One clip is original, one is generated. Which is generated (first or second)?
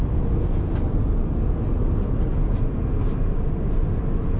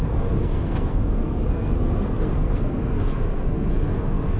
second